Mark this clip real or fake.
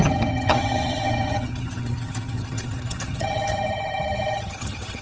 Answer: fake